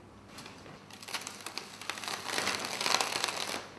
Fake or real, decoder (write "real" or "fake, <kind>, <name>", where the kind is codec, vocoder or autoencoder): real